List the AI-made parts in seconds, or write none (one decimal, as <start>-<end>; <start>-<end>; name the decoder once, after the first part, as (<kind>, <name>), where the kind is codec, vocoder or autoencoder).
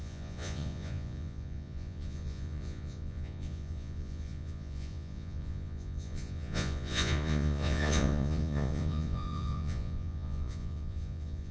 0.0-11.5 (vocoder, Vocos)